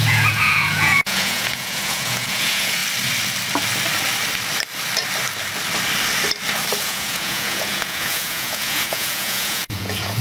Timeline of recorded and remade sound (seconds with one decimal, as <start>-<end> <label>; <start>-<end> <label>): 0.0-2.8 remade; 2.8-6.8 recorded; 6.8-10.2 remade